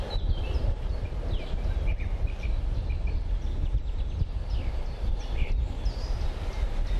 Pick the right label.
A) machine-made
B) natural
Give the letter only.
B